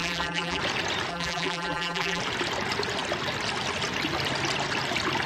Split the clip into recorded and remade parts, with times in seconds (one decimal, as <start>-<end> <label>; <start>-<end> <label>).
0.0-0.6 remade; 0.6-1.1 recorded; 1.1-2.2 remade; 2.2-5.3 recorded